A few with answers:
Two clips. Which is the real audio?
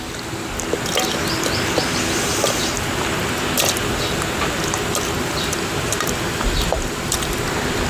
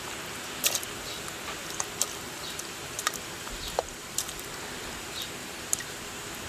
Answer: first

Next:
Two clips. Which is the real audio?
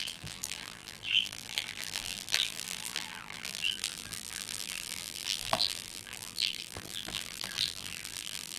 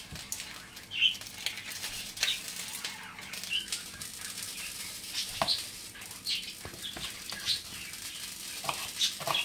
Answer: second